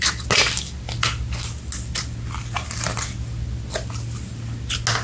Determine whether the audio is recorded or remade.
recorded